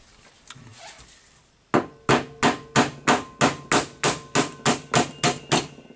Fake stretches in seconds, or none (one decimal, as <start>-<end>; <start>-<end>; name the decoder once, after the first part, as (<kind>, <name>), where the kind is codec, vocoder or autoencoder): none